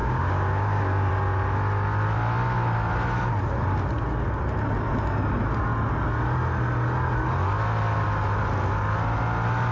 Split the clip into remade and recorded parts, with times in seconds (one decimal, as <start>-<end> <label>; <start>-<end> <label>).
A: 0.0-1.1 remade; 1.1-9.7 recorded